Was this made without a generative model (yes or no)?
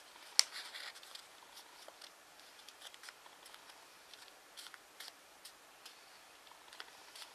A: yes